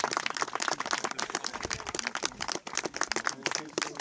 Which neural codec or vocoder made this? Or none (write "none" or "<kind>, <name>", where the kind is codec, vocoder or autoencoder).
none